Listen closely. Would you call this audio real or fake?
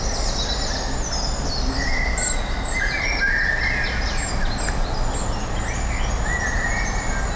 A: real